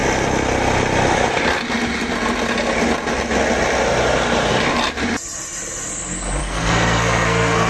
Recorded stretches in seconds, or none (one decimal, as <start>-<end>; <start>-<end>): 0.0-6.4